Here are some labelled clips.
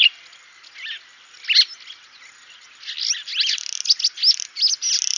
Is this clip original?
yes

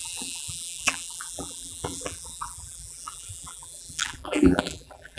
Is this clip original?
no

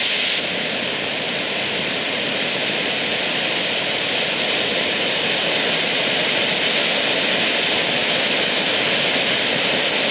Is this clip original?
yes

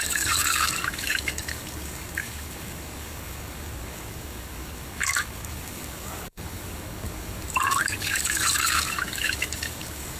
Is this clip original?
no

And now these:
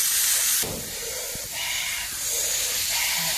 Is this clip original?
yes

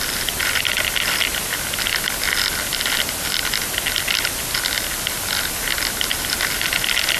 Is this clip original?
yes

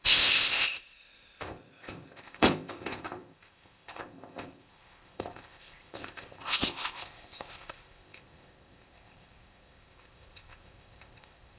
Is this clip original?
no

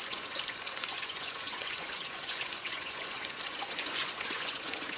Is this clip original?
no